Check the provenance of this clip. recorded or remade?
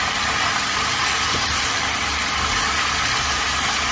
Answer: recorded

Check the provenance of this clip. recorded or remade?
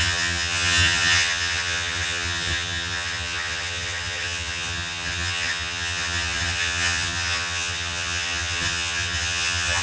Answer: remade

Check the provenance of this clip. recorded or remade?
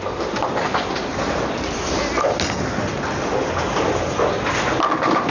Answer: recorded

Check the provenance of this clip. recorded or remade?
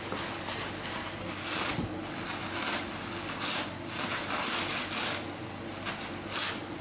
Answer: recorded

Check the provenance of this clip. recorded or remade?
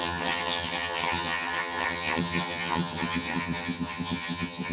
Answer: remade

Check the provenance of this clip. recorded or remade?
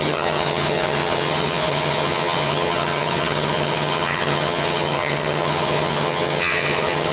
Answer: remade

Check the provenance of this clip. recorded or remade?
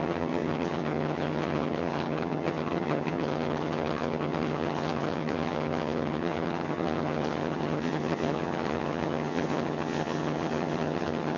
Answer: remade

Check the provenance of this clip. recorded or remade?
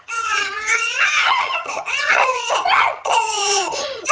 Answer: remade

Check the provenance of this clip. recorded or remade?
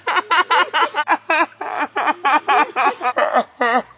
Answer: recorded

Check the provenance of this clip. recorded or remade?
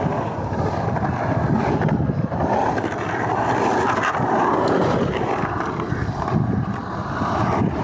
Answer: recorded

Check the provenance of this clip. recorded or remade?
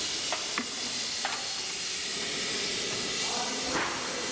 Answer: recorded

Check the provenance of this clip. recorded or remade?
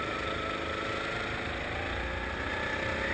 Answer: recorded